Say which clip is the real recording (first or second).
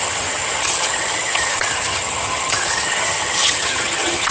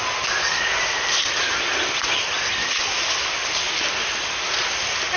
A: second